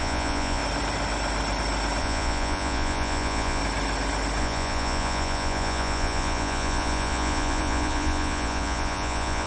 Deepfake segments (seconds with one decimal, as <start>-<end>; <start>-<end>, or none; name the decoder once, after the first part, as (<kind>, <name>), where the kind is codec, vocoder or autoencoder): 0.0-0.6 (vocoder, Vocos); 2.0-3.6; 4.4-9.5